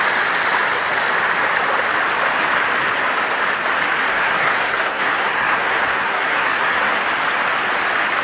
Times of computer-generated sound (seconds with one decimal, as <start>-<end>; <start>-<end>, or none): 4.1-7.0